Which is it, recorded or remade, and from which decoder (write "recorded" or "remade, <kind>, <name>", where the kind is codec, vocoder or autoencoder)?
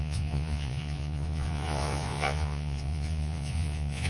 remade, vocoder, Vocos